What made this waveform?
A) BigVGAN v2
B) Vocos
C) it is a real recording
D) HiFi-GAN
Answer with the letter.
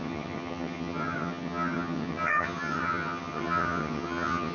D